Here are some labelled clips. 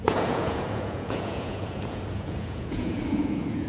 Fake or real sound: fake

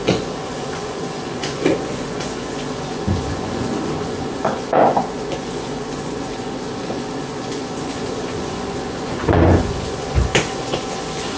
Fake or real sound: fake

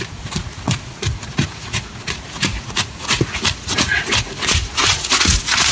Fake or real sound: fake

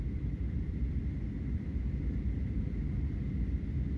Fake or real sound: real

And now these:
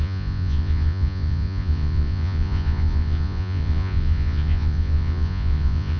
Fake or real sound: fake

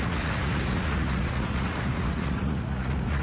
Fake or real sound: fake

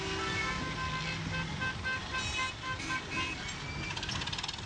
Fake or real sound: real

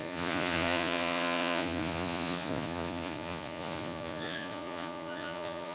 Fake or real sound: fake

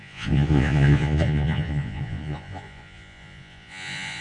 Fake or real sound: fake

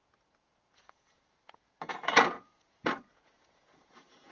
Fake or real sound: fake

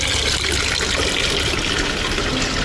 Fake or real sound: real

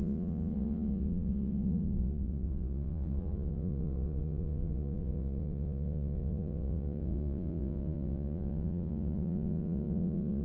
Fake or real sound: fake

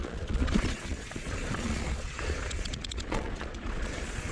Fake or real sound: fake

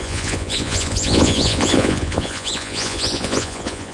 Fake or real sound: fake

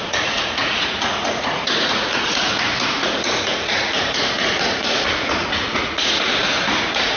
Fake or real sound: fake